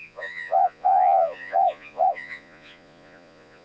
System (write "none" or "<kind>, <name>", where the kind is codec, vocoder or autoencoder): vocoder, Vocos